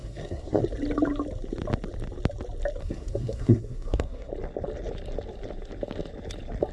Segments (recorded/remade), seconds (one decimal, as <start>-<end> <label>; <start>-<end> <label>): 0.0-0.6 remade; 0.6-2.8 recorded; 2.8-4.3 remade; 4.3-6.7 recorded